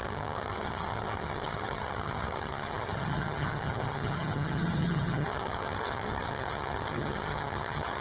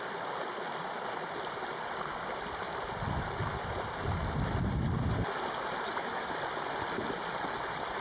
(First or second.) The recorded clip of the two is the second